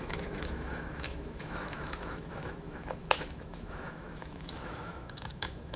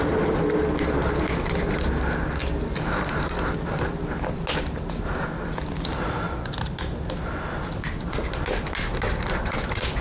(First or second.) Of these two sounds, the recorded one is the second